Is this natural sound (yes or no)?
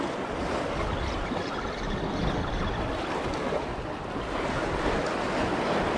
yes